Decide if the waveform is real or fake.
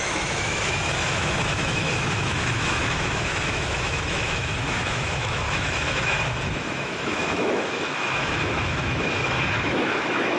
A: fake